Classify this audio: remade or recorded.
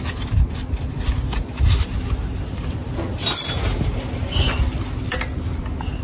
recorded